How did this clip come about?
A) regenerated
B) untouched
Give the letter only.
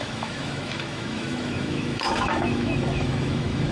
A